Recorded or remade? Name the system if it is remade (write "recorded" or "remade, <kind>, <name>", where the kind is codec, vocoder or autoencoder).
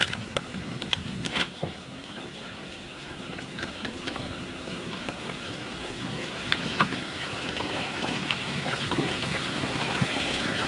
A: remade, codec, SNAC